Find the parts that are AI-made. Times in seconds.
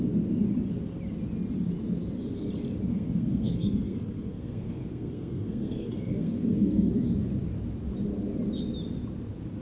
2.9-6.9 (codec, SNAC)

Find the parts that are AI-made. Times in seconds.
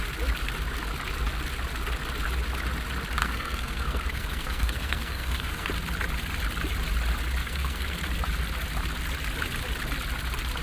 3.2-5.7 (codec, SNAC); 7.4-8.0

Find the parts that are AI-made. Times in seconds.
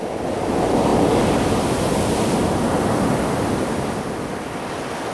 none